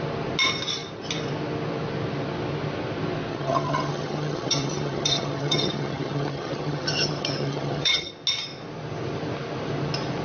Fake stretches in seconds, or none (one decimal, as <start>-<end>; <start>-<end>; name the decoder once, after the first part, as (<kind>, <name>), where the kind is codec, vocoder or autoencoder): 3.3-8.1 (vocoder, HiFi-GAN)